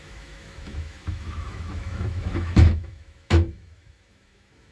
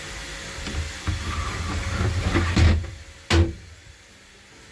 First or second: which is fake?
first